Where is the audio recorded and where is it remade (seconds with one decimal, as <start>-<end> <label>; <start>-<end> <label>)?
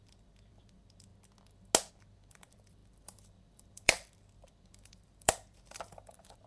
0.0-1.1 remade; 1.1-1.9 recorded; 1.9-6.5 remade